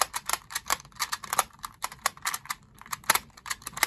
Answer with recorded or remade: remade